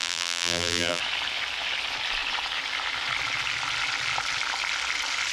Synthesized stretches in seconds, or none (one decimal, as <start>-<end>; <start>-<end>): 0.0-1.0